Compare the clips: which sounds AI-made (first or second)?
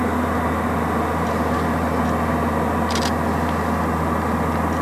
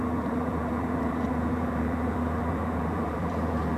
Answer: second